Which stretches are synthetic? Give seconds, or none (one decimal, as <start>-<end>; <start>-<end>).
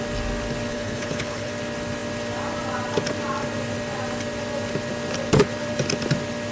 0.7-1.5